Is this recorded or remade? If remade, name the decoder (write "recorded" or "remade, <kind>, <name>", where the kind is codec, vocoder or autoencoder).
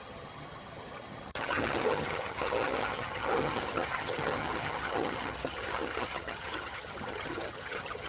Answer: remade, vocoder, HiFi-GAN